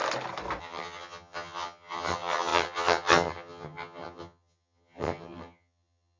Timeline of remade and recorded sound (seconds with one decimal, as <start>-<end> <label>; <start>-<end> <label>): 0.0-0.6 recorded; 0.6-6.2 remade